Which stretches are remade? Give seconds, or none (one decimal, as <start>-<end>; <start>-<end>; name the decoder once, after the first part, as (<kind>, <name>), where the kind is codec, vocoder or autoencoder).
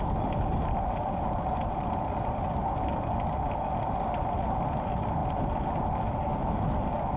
none